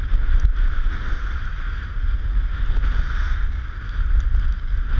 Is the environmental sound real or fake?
real